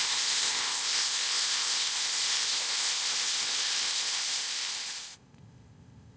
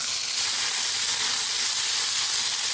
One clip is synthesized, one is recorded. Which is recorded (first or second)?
second